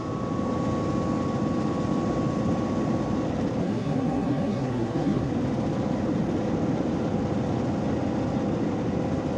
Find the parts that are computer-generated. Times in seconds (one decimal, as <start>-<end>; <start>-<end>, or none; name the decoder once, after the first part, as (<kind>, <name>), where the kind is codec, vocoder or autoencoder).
3.6-5.3 (codec, SNAC)